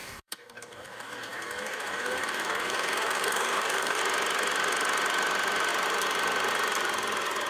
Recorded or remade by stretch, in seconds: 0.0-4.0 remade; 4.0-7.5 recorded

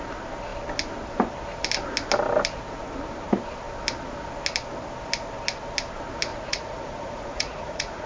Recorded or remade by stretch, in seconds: 0.0-6.3 recorded; 6.3-8.1 remade